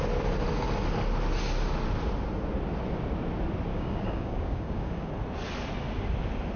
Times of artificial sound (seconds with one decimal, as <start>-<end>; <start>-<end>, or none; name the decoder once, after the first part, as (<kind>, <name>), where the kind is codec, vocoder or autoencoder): 3.7-5.1 (codec, DAC)